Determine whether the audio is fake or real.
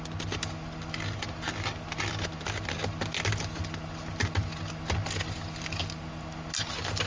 real